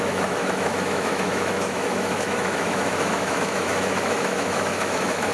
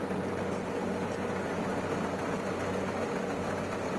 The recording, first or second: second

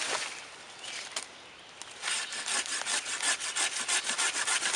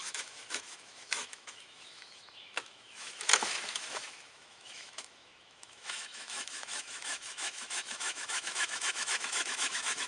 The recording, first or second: first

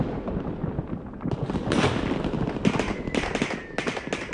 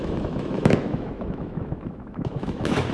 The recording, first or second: first